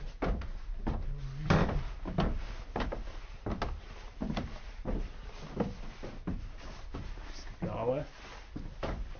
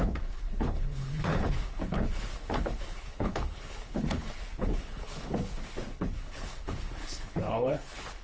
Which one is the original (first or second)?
first